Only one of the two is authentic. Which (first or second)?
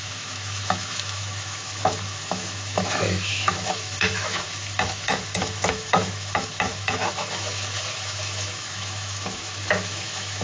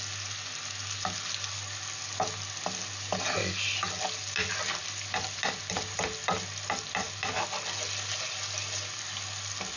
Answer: second